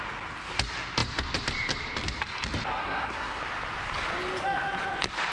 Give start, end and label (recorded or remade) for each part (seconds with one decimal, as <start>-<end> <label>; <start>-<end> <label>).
0.0-2.8 recorded; 2.8-3.4 remade; 3.4-5.3 recorded